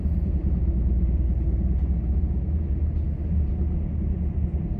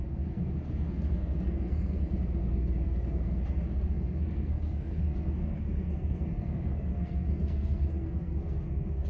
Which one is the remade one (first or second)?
second